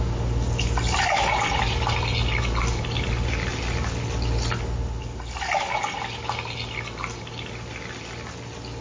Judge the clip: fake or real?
real